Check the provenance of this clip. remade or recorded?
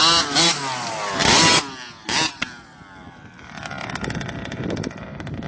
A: recorded